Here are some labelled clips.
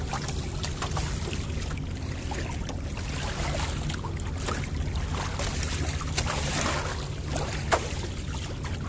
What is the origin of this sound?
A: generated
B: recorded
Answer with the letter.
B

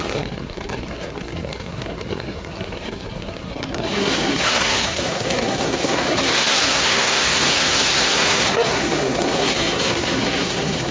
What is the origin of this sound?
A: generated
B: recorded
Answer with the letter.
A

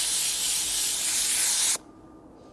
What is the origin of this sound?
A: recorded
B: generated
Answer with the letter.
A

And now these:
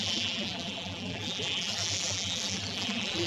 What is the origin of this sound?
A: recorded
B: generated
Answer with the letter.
B